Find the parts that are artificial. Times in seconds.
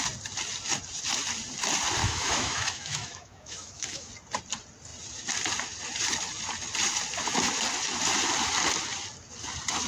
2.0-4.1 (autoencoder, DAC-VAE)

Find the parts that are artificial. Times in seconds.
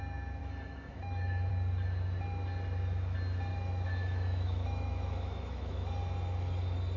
0.4-1.5 (autoencoder, DAC-VAE); 3.5-5.9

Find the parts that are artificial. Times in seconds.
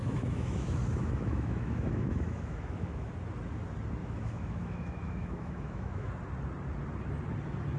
0.0-3.1 (autoencoder, DAC-VAE); 4.0-6.1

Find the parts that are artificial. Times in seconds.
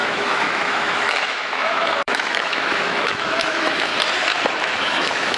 0.0-3.9 (autoencoder, DAC-VAE); 4.6-5.4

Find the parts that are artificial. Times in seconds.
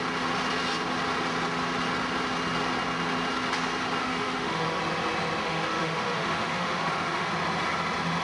4.0-4.8 (autoencoder, DAC-VAE); 5.4-7.3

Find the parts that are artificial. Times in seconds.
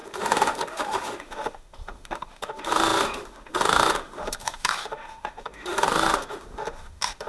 0.0-7.3 (autoencoder, DAC-VAE)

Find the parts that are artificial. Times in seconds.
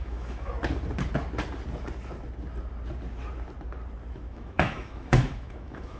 0.0-0.5 (autoencoder, DAC-VAE); 4.1-6.0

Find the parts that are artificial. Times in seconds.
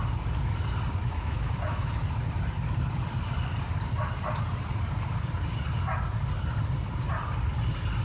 1.0-1.9 (autoencoder, DAC-VAE)